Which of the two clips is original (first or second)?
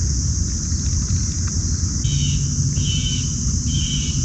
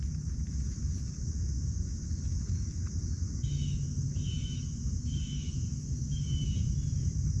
first